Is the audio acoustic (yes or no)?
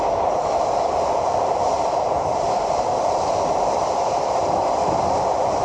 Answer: yes